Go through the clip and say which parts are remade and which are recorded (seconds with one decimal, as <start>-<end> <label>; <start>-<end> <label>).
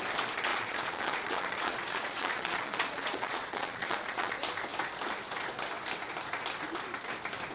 0.0-0.5 recorded; 0.5-4.3 remade; 4.3-7.5 recorded